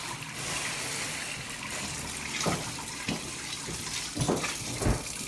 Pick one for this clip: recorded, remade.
recorded